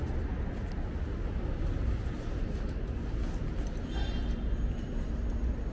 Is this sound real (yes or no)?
yes